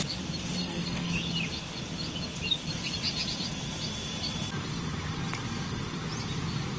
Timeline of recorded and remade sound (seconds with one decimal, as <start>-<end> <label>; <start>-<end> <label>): 0.0-0.6 recorded; 0.6-1.1 remade; 1.1-6.8 recorded

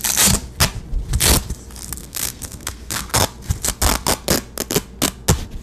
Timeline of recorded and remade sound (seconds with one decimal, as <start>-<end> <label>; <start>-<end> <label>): 0.0-2.0 recorded; 2.0-3.1 remade; 3.1-5.6 recorded

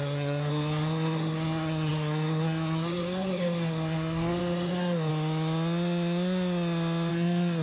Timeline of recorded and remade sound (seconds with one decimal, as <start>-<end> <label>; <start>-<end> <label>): 0.0-5.1 remade; 5.1-7.1 recorded; 7.1-7.6 remade

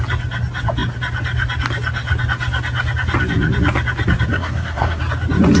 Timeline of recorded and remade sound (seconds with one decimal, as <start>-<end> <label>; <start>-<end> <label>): 0.0-4.3 recorded; 4.3-5.0 remade; 5.0-5.6 recorded

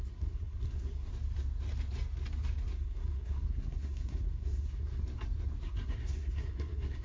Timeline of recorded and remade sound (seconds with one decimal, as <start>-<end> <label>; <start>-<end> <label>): 0.0-1.1 remade; 1.1-2.7 recorded; 2.7-5.0 remade; 5.0-5.6 recorded; 5.6-7.0 remade

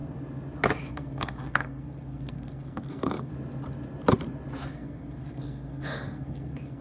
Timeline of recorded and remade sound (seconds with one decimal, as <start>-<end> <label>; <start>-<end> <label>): 0.0-0.9 recorded; 0.9-3.3 remade; 3.3-4.7 recorded; 4.7-6.8 remade

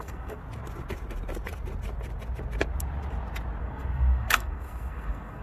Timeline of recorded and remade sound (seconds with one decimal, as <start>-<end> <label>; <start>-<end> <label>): 0.0-0.4 remade; 0.4-3.6 recorded; 3.6-5.4 remade

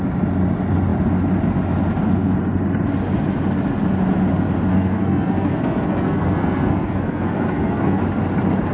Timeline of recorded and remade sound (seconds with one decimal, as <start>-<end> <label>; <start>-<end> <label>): 0.0-4.7 recorded; 4.7-8.0 remade; 8.0-8.7 recorded